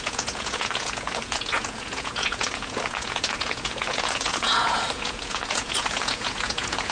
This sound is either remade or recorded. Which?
remade